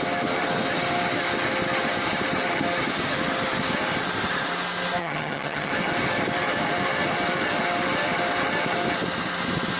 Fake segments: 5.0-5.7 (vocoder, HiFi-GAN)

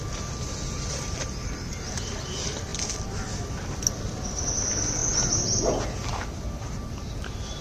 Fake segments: none

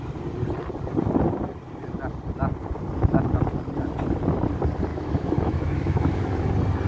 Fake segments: 4.9-6.5 (autoencoder, DAC-VAE)

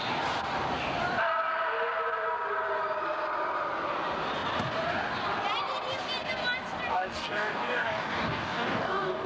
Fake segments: 6.9-9.3 (codec, DAC)